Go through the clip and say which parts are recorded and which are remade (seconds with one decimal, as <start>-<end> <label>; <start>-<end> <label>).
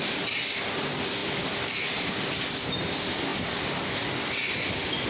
0.0-5.1 recorded